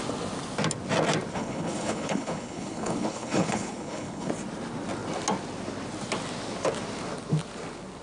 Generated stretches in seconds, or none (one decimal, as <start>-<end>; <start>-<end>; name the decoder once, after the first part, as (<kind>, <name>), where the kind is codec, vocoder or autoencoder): 1.3-4.3 (codec, HILCodec)